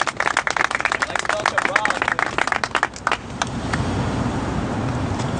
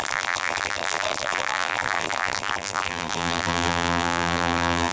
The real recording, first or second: first